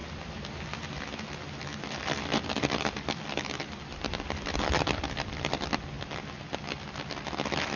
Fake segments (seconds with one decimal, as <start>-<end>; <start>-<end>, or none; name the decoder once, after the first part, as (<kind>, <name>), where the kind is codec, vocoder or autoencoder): 0.0-1.0 (vocoder, BigVGAN v2); 1.7-5.8